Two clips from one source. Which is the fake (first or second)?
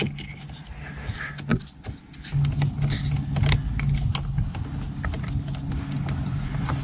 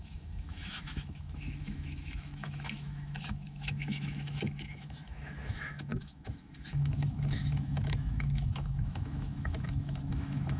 second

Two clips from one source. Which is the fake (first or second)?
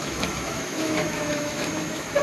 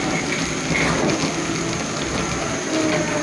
first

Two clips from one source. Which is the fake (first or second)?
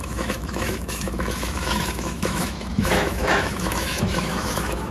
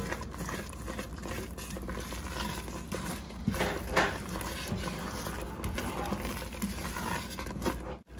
first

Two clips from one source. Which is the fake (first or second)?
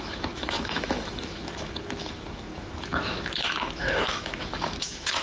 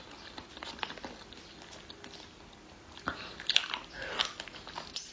first